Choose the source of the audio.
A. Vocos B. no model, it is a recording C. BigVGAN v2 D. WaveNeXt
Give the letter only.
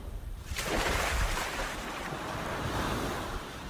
C